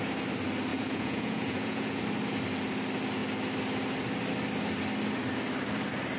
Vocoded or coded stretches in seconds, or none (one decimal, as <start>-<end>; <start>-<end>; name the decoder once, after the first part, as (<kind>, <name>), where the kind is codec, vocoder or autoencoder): 0.7-2.0 (vocoder, Vocos)